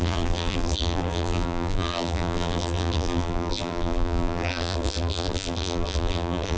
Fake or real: fake